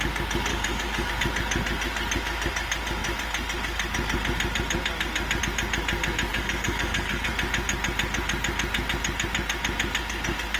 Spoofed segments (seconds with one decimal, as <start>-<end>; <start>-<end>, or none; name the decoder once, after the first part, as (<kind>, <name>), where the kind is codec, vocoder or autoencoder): 0.5-1.1 (codec, DAC); 6.3-7.3